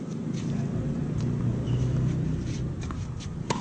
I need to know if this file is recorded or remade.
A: recorded